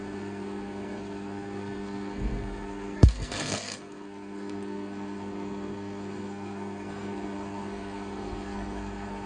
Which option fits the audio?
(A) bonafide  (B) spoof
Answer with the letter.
B